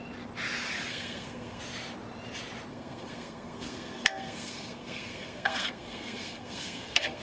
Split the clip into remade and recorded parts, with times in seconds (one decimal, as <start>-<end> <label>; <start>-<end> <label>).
0.0-0.9 recorded; 0.9-1.6 remade; 1.6-2.7 recorded; 2.7-7.2 remade